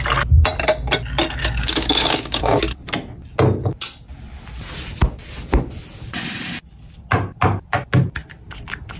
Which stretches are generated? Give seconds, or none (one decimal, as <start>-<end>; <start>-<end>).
1.4-2.6